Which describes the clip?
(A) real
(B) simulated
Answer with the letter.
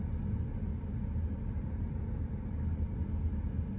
A